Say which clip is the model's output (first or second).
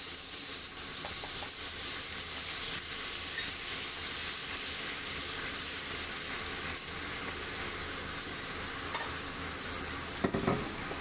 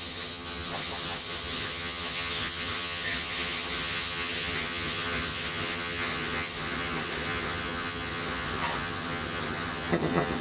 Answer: second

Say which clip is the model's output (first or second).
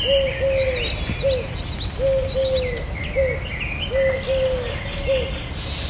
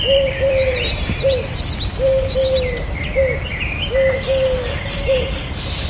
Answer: second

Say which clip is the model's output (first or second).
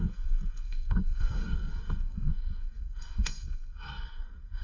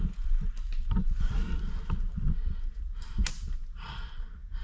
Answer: first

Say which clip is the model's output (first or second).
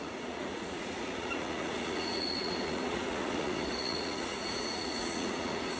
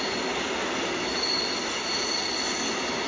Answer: first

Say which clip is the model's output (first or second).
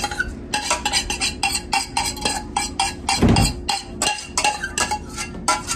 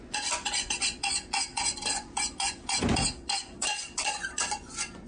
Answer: second